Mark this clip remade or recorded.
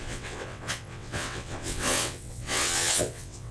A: remade